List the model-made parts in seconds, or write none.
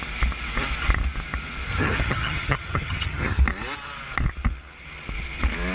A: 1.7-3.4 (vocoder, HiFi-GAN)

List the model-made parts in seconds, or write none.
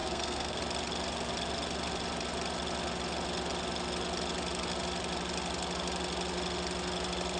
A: 0.0-0.6 (codec, SNAC)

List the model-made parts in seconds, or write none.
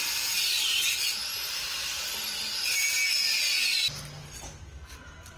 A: 0.0-0.8 (vocoder, BigVGAN v2); 1.3-2.0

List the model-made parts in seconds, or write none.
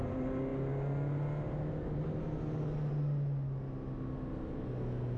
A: none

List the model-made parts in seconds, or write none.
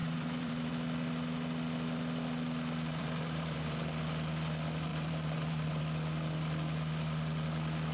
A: 0.0-0.7 (vocoder, BigVGAN v2); 2.9-3.8; 4.9-5.8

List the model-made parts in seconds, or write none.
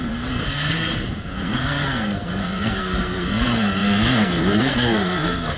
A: 0.0-5.6 (codec, SNAC)